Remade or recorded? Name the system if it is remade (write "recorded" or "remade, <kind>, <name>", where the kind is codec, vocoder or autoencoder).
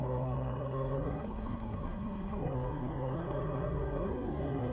remade, codec, SNAC